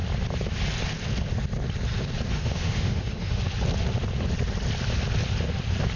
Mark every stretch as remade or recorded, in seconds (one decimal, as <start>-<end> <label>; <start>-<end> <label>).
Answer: 0.0-2.3 recorded; 2.3-3.4 remade; 3.4-6.0 recorded